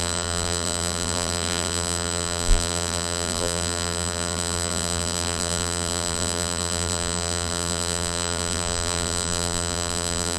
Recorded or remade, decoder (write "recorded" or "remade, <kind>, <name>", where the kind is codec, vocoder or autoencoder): remade, vocoder, BigVGAN v2